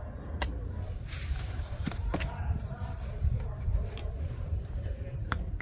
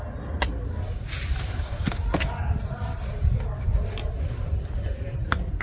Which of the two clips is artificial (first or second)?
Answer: first